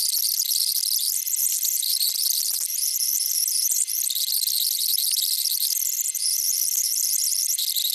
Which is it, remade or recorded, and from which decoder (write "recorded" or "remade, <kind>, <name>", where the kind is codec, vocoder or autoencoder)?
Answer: remade, vocoder, BigVGAN v2